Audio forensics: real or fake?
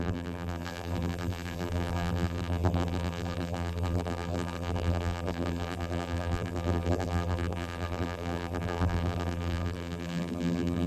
fake